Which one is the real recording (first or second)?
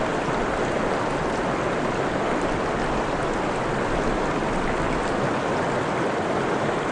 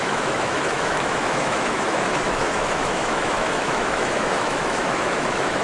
first